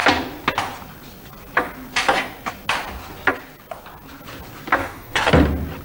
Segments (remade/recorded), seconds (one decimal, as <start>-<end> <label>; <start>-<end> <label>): 0.0-4.8 recorded; 4.8-5.3 remade; 5.3-5.8 recorded

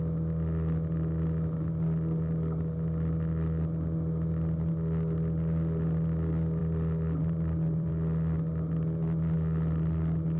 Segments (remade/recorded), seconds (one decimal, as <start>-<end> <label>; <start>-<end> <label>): 0.0-6.6 recorded; 6.6-7.9 remade; 7.9-10.4 recorded

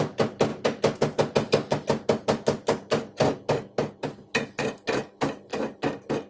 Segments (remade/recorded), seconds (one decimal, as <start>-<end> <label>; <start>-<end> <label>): 0.0-6.3 recorded

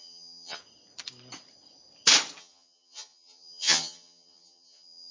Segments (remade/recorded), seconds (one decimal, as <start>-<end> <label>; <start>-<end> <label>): 0.0-0.6 remade; 0.6-2.4 recorded; 2.4-5.1 remade

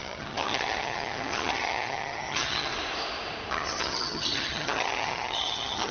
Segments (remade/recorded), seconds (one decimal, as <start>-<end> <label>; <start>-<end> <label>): 0.0-2.7 remade; 2.7-3.5 recorded; 3.5-5.9 remade

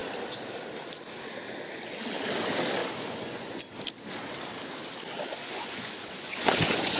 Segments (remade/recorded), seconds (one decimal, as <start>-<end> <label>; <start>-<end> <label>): 0.0-2.8 recorded; 2.8-3.6 remade; 3.6-5.4 recorded; 5.4-7.0 remade

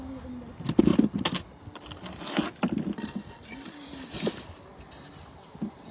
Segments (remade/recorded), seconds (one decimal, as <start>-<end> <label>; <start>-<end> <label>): 0.0-5.9 recorded